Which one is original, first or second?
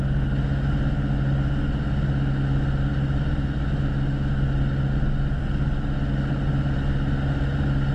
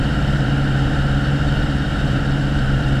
first